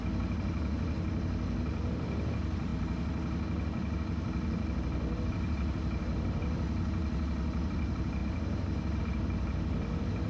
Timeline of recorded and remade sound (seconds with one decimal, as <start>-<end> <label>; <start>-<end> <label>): 0.0-1.7 recorded; 1.7-2.7 remade; 2.7-5.3 recorded; 5.3-10.3 remade